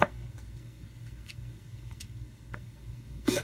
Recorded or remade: remade